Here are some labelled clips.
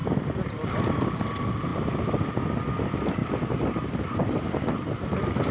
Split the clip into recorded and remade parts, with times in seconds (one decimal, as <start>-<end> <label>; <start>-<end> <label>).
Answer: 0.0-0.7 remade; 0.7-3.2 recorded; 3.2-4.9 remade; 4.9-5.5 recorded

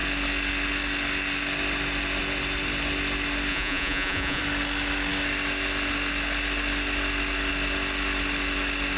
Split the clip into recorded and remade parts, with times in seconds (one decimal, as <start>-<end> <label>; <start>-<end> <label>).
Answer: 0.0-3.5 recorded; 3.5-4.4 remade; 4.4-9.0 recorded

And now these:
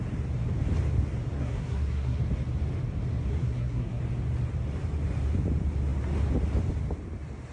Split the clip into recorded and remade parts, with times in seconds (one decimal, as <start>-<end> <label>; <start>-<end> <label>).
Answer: 0.0-1.3 recorded; 1.3-2.2 remade; 2.2-3.3 recorded; 3.3-4.0 remade; 4.0-7.5 recorded